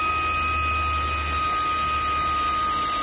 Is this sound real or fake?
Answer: real